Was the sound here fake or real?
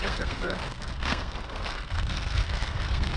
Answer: fake